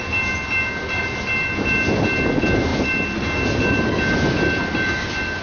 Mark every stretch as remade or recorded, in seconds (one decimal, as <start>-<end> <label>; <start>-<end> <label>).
0.0-5.4 recorded